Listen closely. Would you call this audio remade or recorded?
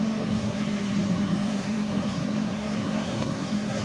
remade